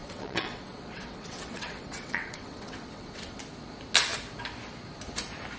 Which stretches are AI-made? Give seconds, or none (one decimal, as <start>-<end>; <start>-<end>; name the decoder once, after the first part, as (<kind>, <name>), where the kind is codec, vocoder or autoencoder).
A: 0.0-3.4 (vocoder, WaveNeXt)